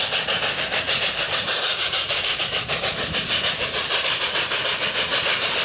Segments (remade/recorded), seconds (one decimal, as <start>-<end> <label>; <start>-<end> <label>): 0.0-1.7 recorded; 1.7-2.4 remade; 2.4-5.6 recorded